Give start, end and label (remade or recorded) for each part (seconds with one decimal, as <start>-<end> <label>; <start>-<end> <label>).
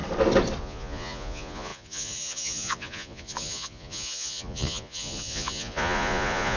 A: 0.0-0.6 recorded; 0.6-6.6 remade